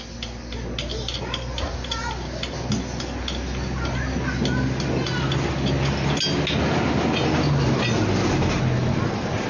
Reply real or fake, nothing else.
real